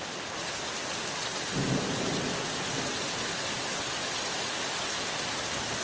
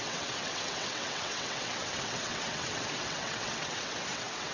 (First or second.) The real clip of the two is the first